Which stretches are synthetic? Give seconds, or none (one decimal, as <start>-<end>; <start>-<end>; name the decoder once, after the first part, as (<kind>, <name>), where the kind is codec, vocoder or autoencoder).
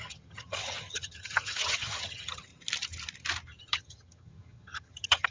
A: 0.0-2.5 (vocoder, HiFi-GAN); 3.6-5.3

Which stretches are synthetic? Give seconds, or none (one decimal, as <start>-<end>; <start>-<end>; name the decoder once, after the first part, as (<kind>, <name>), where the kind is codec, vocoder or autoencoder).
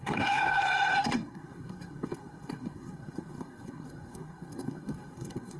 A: 0.0-5.6 (codec, SNAC)